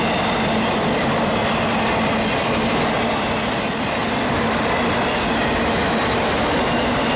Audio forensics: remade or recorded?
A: recorded